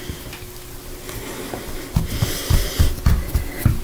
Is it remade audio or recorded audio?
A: recorded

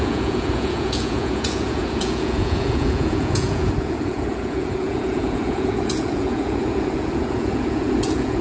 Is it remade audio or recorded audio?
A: remade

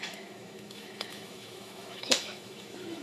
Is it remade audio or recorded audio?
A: remade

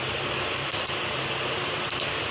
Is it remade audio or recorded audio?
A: recorded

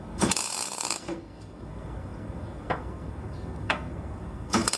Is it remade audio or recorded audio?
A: remade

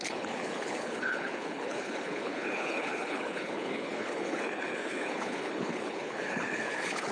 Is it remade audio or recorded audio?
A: remade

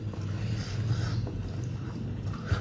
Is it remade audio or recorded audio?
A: recorded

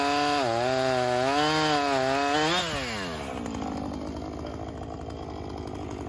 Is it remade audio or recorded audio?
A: recorded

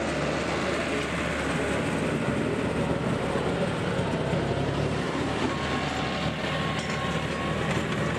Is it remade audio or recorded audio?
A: recorded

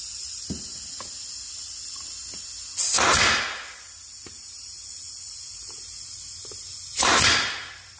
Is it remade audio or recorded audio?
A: recorded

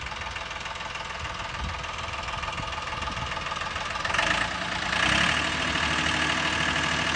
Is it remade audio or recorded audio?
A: recorded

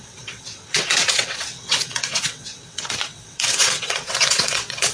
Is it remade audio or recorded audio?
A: remade